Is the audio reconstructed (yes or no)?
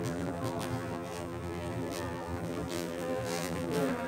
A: yes